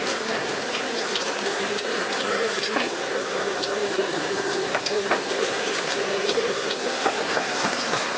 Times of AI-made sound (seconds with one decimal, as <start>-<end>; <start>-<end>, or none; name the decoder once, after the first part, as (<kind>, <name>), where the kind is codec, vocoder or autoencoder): 0.0-8.2 (codec, SNAC)